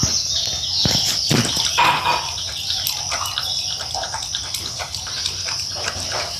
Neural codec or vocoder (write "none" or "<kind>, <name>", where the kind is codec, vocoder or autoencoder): none